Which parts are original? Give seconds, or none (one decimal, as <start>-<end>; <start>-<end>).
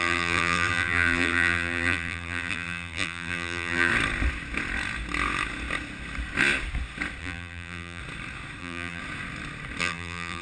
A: 3.9-7.2; 8.0-8.6; 9.0-9.8